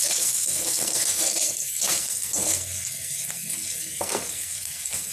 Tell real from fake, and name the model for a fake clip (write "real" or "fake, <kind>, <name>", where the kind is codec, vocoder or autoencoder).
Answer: fake, codec, SNAC